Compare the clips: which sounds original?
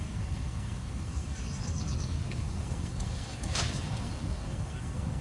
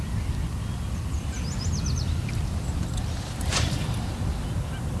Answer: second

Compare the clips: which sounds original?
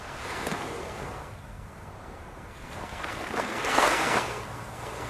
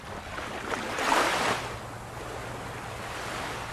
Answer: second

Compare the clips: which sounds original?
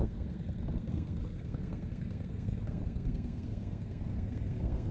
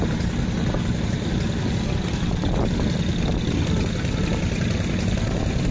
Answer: second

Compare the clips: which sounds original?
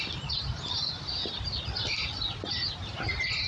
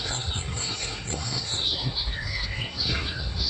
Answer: first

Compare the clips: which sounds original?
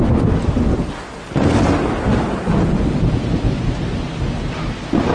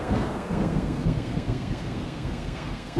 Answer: first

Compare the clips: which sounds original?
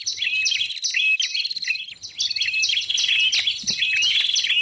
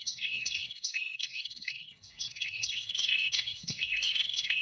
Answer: first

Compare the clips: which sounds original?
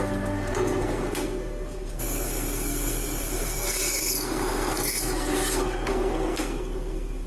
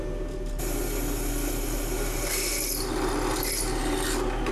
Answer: second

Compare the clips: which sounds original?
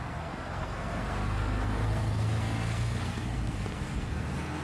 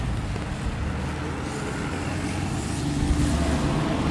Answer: second